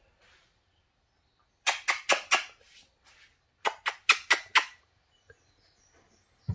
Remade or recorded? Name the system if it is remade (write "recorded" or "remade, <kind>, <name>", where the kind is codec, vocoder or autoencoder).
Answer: recorded